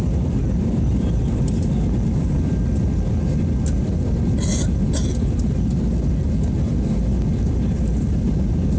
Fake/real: real